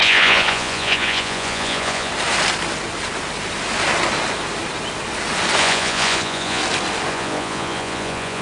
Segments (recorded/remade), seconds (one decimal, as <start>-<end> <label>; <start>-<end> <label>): 0.0-2.1 remade; 2.1-5.6 recorded; 5.6-6.6 remade; 6.6-7.1 recorded; 7.1-8.4 remade